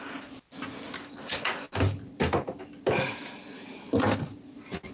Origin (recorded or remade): recorded